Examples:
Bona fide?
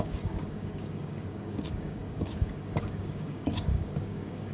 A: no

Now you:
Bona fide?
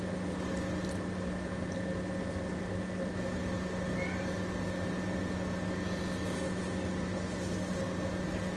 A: yes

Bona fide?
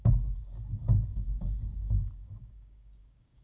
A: no